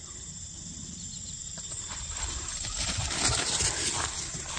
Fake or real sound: fake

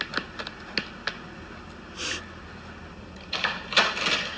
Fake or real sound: real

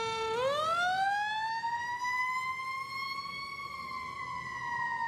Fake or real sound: real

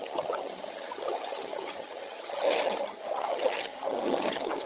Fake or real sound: fake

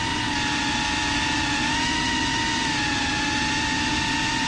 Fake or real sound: real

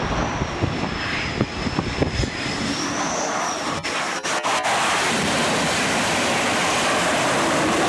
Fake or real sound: fake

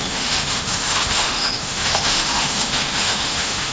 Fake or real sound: fake